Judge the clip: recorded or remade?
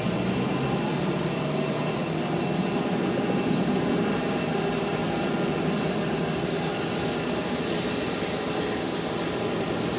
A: recorded